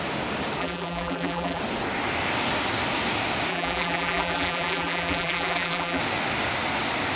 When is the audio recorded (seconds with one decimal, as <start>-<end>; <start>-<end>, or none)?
0.0-0.6; 1.6-3.5; 6.0-7.2

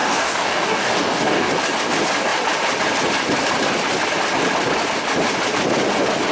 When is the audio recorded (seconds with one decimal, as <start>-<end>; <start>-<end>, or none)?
1.5-6.3